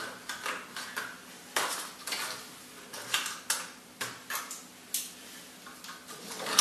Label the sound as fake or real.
real